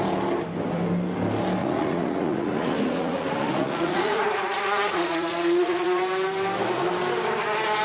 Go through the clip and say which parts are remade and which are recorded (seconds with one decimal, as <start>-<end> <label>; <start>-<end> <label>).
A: 0.0-1.6 recorded; 1.6-6.0 remade; 6.0-7.8 recorded